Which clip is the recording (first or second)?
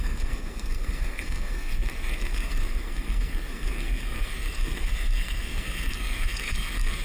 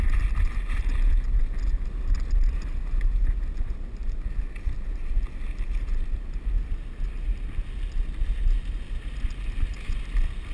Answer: second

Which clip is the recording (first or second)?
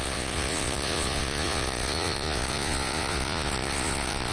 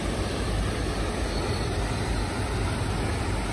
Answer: second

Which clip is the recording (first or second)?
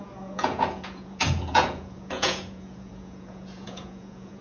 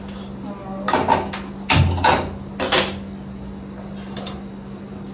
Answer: second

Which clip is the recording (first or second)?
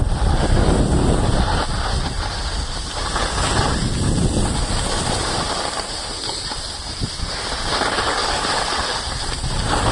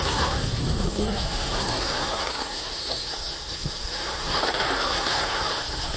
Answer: first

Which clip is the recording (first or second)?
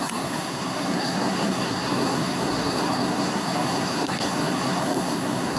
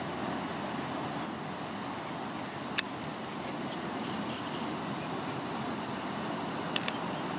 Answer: second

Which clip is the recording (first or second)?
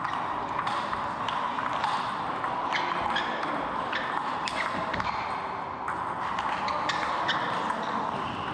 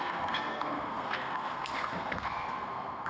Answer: first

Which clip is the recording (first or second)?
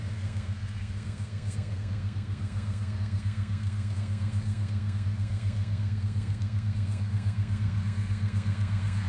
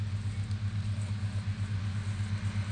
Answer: second